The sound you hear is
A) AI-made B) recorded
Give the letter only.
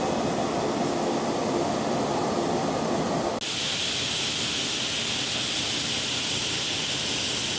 B